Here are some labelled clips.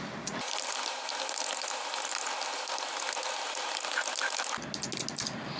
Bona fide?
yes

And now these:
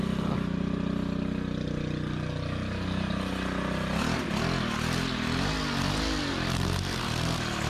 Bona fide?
yes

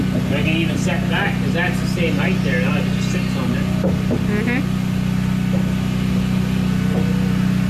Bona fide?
yes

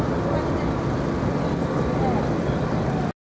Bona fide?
yes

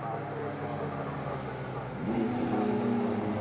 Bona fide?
yes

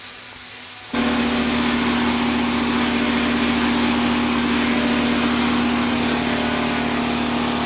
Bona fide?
yes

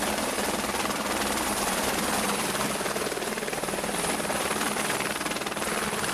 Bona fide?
no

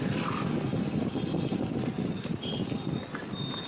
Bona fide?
yes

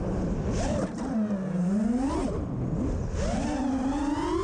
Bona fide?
yes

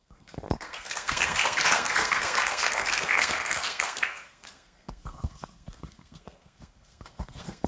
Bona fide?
no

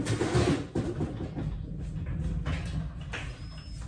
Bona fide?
yes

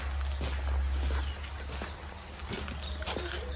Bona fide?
yes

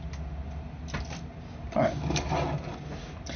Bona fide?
yes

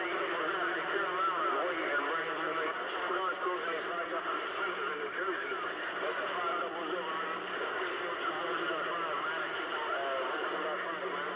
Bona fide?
yes